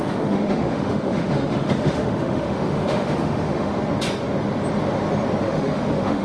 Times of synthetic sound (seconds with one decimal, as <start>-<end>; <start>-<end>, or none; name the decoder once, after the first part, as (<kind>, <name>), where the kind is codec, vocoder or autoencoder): 0.0-3.7 (autoencoder, DAC-VAE); 5.4-6.2

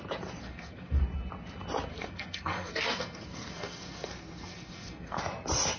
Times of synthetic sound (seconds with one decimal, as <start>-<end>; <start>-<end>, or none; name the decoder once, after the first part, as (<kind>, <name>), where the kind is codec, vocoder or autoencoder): 0.4-1.0 (codec, SNAC); 1.9-5.2

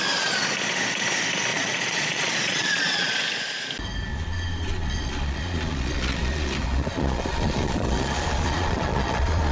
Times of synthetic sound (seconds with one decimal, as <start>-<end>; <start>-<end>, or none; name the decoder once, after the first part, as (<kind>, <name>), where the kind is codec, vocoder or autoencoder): 1.5-3.1 (vocoder, Vocos); 4.1-9.5